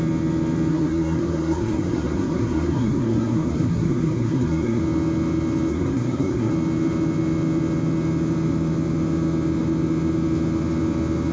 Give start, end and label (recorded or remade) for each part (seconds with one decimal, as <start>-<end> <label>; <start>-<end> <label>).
0.0-0.7 recorded; 0.7-4.8 remade; 4.8-5.7 recorded; 5.7-6.5 remade; 6.5-11.3 recorded